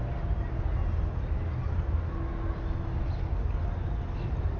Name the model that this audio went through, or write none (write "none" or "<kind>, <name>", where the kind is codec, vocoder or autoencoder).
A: none